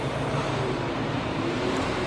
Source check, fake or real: fake